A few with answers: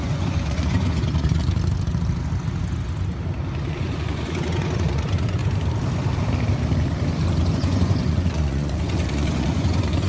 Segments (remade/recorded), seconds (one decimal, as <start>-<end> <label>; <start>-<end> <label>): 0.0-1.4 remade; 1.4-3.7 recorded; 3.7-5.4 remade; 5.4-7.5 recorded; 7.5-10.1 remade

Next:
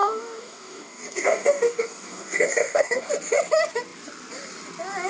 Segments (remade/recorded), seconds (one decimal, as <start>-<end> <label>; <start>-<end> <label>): 0.0-3.1 remade; 3.1-5.1 recorded

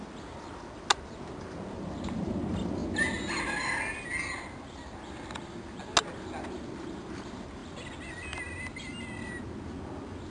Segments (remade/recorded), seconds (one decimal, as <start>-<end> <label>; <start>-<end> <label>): 0.0-10.3 recorded

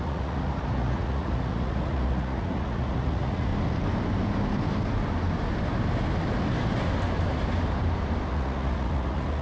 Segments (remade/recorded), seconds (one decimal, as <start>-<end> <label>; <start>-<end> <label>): 0.0-3.5 remade; 3.5-8.3 recorded; 8.3-9.4 remade